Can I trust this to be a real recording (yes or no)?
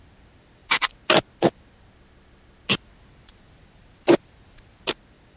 yes